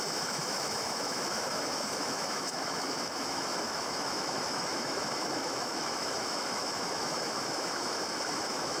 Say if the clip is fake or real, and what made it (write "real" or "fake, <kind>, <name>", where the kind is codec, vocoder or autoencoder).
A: fake, autoencoder, DAC-VAE